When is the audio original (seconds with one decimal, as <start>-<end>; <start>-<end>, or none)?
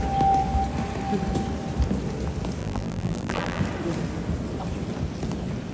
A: 0.0-2.6; 3.6-5.7